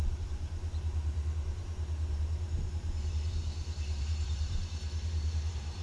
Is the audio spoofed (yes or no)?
yes